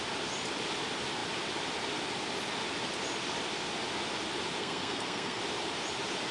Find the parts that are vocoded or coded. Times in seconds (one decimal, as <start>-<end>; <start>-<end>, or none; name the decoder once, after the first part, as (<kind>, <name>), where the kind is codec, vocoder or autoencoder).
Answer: 4.6-5.4 (codec, SNAC)